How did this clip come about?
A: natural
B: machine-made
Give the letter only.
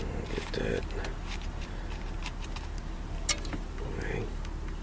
A